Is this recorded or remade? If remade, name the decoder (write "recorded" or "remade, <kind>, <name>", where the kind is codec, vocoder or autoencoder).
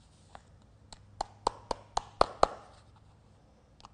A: recorded